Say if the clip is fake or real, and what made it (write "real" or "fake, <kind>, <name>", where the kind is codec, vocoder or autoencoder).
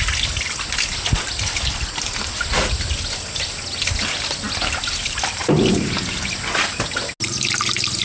real